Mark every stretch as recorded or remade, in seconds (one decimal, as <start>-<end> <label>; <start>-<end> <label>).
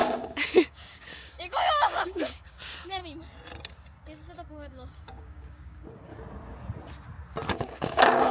0.0-3.0 remade; 3.0-4.5 recorded; 4.5-6.1 remade; 6.1-7.5 recorded; 7.5-8.3 remade